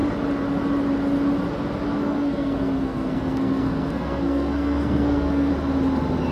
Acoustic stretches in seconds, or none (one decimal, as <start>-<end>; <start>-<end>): 0.0-1.9; 5.5-6.3